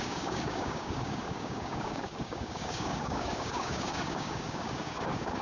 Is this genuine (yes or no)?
no